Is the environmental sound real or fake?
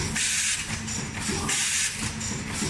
real